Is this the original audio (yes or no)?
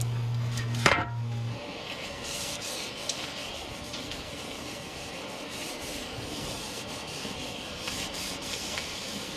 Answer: no